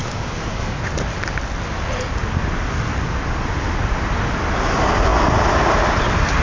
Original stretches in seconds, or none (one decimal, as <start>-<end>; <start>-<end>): 0.8-6.4